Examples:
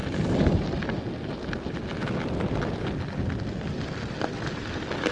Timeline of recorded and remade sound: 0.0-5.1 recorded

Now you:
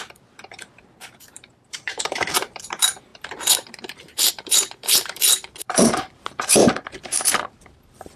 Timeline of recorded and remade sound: 0.0-8.2 remade

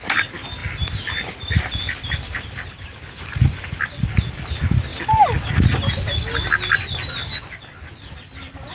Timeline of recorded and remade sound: 0.0-8.7 recorded

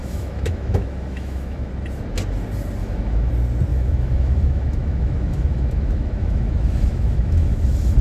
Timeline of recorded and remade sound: 0.0-1.7 remade; 1.7-2.8 recorded; 2.8-3.3 remade; 3.3-3.7 recorded; 3.7-8.0 remade

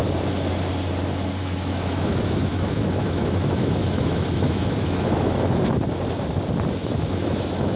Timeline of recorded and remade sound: 0.0-1.4 recorded; 1.4-5.3 remade; 5.3-6.8 recorded; 6.8-7.8 remade

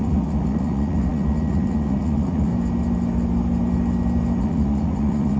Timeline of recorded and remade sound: 0.0-2.5 remade; 2.5-4.4 recorded; 4.4-5.4 remade

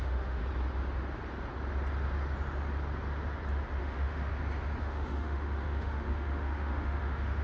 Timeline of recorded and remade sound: 0.0-0.4 remade; 0.4-3.8 recorded; 3.8-4.3 remade; 4.3-4.8 recorded; 4.8-7.4 remade

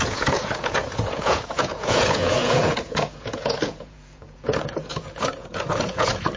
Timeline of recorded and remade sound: 0.0-6.4 remade